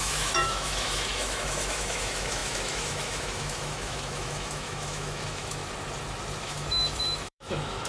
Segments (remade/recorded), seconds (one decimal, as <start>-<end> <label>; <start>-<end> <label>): 0.0-5.6 remade; 5.6-6.4 recorded; 6.4-7.9 remade